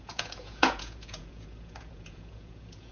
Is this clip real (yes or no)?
no